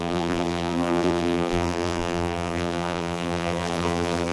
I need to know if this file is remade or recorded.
remade